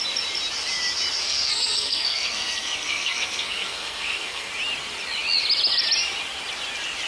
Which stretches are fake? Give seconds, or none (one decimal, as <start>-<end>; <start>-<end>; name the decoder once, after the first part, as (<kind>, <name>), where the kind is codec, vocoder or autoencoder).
1.2-4.5 (codec, SNAC)